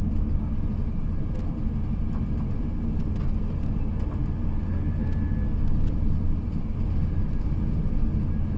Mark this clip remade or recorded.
recorded